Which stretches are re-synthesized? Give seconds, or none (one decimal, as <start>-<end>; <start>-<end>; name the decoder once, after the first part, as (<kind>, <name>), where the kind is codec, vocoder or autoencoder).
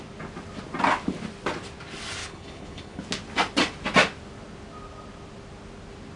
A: 2.2-3.0 (codec, HILCodec)